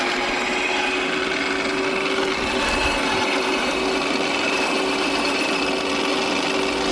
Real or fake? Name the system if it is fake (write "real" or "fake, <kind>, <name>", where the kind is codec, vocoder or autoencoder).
real